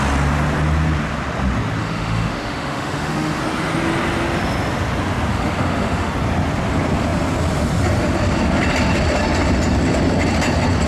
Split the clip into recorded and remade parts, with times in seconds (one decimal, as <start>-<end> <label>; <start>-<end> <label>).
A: 0.0-1.8 recorded; 1.8-3.4 remade; 3.4-5.3 recorded; 5.3-6.1 remade; 6.1-10.9 recorded